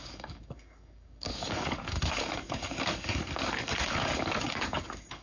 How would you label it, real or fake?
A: fake